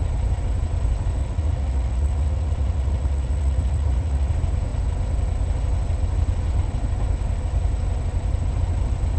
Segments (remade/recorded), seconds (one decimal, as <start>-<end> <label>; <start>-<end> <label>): 0.0-1.2 recorded; 1.2-4.3 remade; 4.3-9.2 recorded